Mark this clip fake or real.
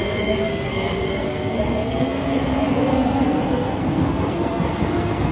fake